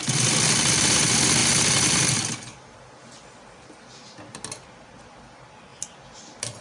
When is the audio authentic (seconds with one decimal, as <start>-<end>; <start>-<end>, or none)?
0.0-6.6